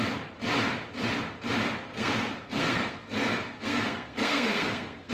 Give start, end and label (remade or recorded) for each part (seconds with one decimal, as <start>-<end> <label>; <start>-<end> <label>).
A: 0.0-1.9 recorded; 1.9-5.1 remade